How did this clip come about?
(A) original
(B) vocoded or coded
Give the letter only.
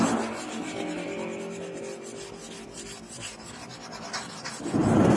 A